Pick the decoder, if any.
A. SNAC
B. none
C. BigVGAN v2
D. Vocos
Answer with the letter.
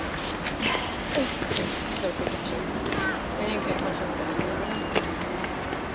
B